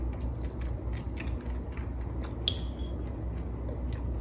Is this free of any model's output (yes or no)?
yes